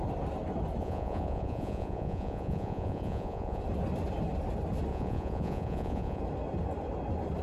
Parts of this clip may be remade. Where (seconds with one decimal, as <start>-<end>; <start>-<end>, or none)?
0.8-3.6; 4.9-6.2